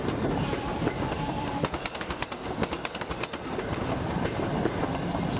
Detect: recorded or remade remade